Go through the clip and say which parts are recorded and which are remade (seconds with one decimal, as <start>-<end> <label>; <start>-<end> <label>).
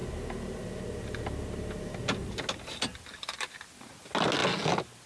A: 0.0-5.1 recorded